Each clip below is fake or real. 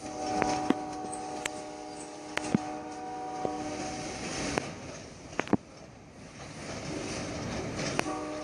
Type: real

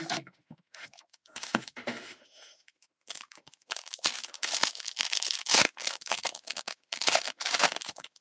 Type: fake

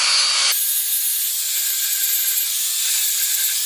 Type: real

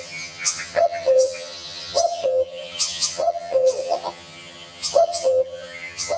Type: fake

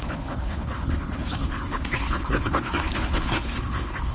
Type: fake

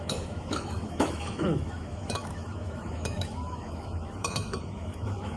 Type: fake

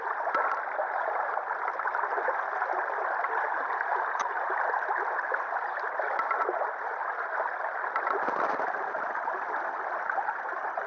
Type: real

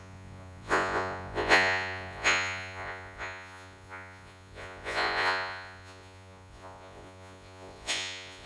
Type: fake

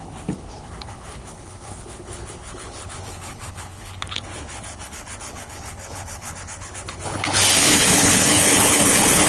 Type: fake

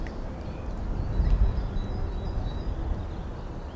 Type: real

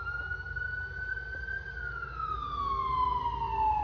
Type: real